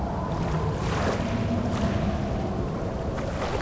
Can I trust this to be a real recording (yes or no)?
yes